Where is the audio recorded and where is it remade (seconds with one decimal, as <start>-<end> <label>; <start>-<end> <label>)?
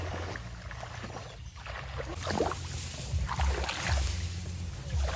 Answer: 0.0-5.2 recorded